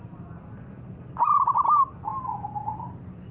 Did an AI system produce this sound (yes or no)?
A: no